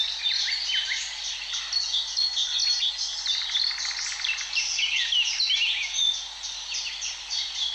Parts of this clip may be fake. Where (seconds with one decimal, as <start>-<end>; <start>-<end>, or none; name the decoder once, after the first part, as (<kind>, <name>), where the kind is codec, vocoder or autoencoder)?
0.0-2.6 (vocoder, BigVGAN v2); 3.2-4.7; 6.9-7.7